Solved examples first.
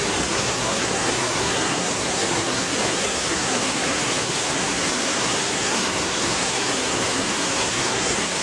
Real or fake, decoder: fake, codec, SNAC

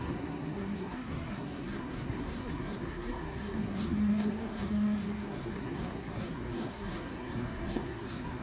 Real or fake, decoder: fake, codec, SNAC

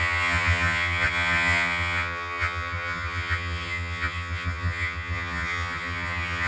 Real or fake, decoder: fake, vocoder, HiFi-GAN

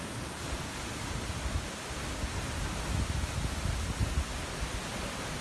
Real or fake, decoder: real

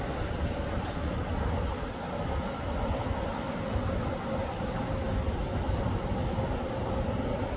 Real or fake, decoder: real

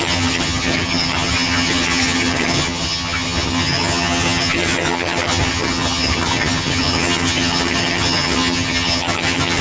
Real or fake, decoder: fake, vocoder, HiFi-GAN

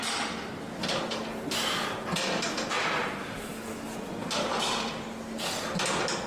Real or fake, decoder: real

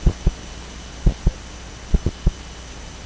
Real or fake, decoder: real